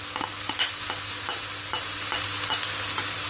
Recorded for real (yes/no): yes